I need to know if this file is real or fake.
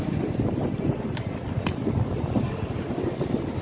real